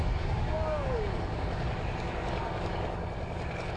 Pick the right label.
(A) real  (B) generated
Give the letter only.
B